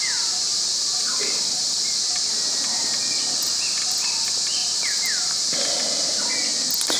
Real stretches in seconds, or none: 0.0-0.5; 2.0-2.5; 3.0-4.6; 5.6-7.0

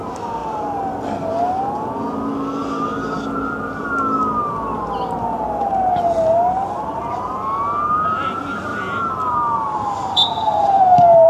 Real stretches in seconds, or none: 0.0-8.7; 10.8-11.3

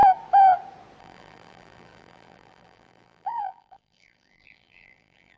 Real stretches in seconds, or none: 0.0-1.0

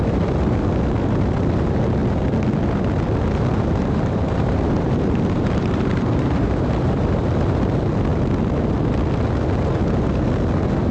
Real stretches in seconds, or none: 0.0-3.8; 7.3-10.9

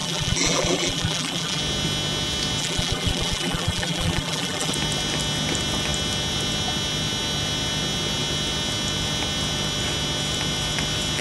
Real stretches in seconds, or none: 1.6-2.6; 4.7-11.2

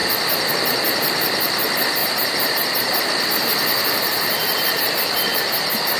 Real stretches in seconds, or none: 0.5-2.0; 3.0-5.3